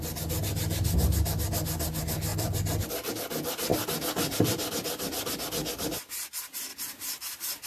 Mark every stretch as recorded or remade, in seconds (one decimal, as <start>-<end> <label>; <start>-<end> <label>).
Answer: 0.0-2.3 recorded; 2.3-3.1 remade; 3.1-6.7 recorded; 6.7-7.7 remade